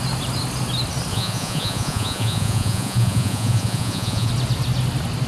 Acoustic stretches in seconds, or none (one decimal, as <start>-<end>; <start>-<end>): 0.0-1.1; 4.3-5.3